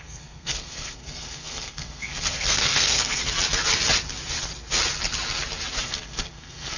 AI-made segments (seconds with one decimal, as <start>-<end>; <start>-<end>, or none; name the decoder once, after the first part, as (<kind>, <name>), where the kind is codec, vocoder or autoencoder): 0.0-3.2 (codec, SNAC); 5.8-6.8